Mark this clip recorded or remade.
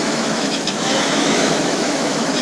remade